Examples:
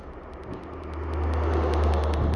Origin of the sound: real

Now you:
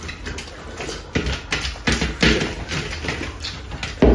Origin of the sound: real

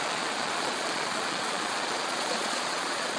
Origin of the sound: fake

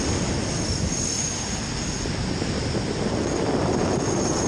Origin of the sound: real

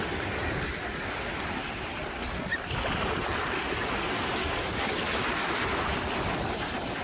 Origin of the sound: real